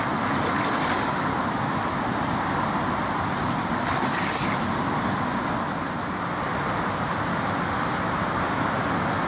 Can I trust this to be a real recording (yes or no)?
yes